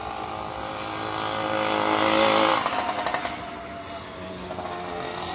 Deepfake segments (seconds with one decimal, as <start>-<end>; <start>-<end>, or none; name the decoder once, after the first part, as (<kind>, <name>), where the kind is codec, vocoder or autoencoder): none